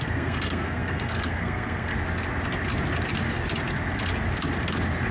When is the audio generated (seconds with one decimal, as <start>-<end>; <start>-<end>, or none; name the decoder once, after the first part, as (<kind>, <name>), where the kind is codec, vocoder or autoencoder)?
0.0-1.9 (codec, SNAC)